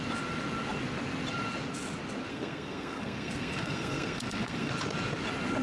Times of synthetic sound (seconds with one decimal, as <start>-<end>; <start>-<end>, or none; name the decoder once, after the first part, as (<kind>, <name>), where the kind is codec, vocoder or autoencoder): 2.3-4.7 (codec, SNAC)